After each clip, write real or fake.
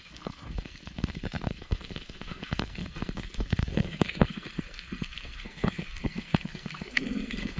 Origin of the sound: fake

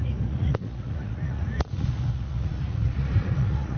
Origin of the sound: fake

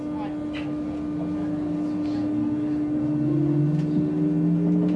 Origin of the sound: real